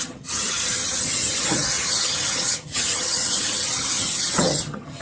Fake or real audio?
fake